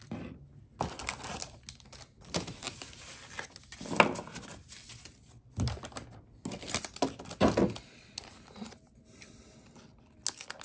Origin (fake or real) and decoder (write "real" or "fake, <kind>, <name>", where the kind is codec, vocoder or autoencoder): real